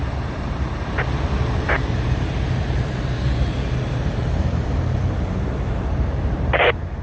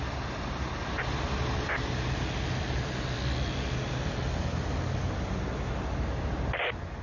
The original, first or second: second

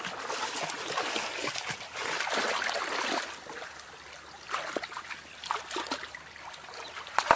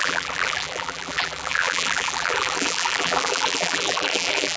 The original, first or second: first